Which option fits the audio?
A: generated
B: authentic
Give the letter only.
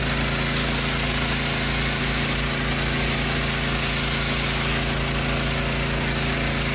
B